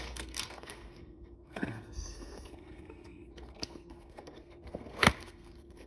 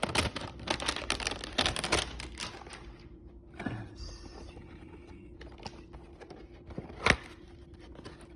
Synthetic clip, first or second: first